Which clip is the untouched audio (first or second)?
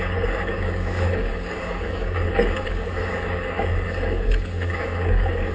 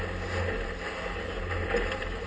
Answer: second